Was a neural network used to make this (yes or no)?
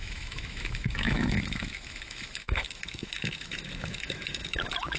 yes